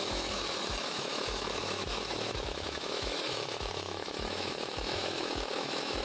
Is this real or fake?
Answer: fake